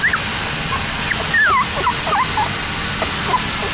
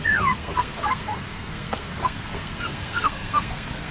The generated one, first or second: second